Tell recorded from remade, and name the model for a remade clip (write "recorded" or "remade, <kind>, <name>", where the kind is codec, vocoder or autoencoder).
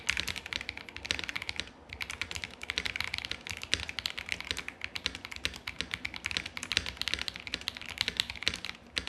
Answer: recorded